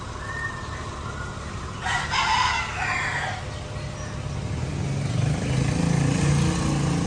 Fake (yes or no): no